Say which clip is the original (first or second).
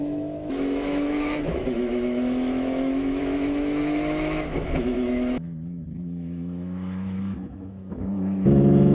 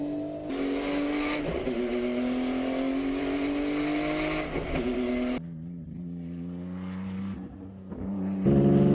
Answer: second